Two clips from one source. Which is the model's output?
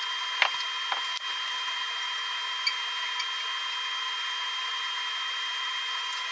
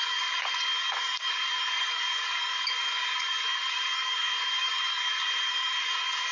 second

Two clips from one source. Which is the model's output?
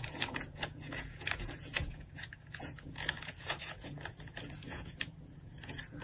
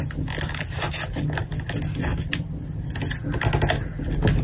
first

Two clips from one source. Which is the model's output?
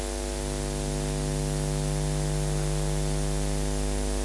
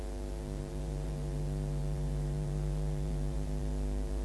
second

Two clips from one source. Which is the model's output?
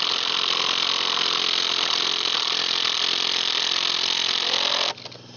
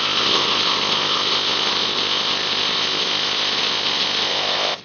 second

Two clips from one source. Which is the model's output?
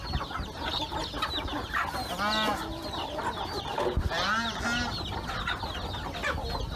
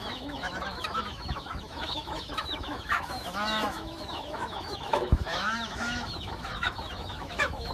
second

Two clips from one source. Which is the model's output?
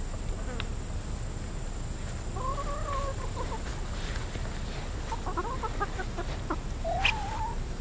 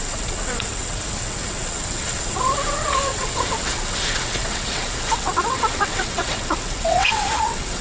second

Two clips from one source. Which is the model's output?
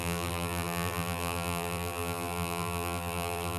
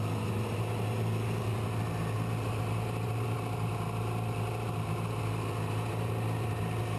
first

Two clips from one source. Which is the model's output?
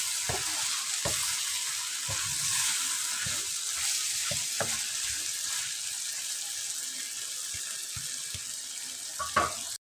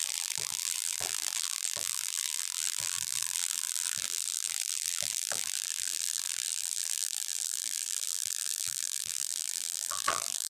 second